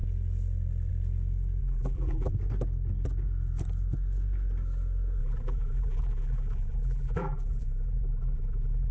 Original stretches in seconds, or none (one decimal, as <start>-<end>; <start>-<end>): 0.0-1.6; 2.3-5.2